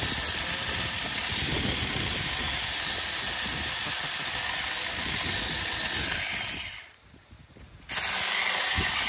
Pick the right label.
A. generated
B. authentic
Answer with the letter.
B